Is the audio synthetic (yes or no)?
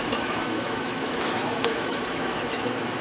yes